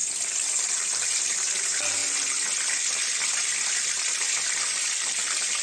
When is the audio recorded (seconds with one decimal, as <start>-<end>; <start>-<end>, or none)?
0.0-0.5; 2.0-5.6